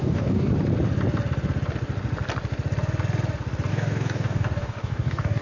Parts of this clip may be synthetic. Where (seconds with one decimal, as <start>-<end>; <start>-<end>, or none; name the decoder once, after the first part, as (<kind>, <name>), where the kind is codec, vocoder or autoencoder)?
0.0-0.5 (codec, DAC); 3.7-5.4